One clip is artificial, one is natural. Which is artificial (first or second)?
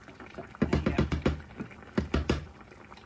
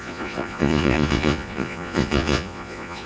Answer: second